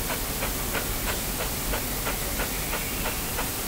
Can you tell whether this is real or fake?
real